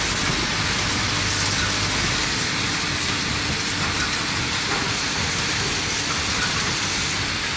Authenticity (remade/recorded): recorded